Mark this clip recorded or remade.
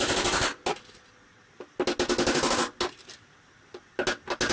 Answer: recorded